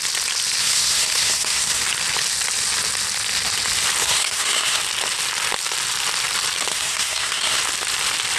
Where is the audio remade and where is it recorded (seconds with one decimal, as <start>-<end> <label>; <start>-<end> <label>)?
0.0-0.6 recorded; 0.6-1.8 remade; 1.8-4.0 recorded; 4.0-4.8 remade; 4.8-6.7 recorded; 6.7-7.6 remade; 7.6-8.4 recorded